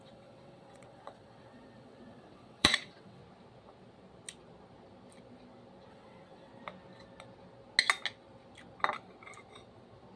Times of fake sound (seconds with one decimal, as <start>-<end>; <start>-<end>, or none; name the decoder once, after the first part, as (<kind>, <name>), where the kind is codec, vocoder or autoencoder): 0.0-3.2 (vocoder, WaveNeXt); 5.9-6.5